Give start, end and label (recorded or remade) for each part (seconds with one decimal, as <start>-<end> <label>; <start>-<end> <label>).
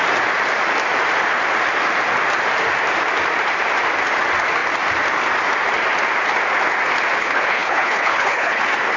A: 0.0-7.2 recorded; 7.2-8.6 remade; 8.6-9.0 recorded